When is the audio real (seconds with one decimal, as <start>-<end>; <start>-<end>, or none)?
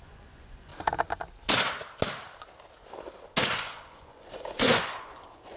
0.7-3.4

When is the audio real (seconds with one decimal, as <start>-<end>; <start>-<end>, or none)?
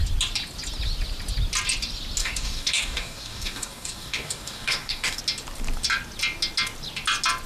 0.0-2.2; 5.2-7.5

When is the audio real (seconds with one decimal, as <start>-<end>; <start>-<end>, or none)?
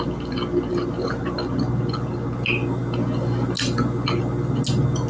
0.0-0.7; 1.2-5.1